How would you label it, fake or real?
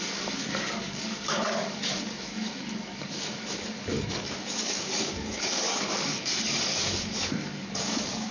fake